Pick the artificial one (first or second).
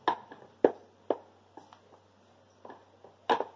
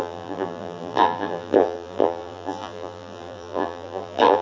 second